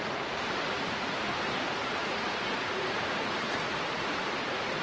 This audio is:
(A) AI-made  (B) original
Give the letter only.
A